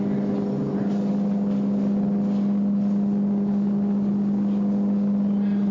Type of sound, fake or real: real